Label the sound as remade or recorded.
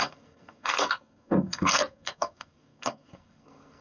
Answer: remade